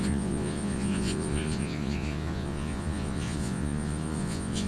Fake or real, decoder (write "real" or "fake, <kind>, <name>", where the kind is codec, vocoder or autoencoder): fake, vocoder, Vocos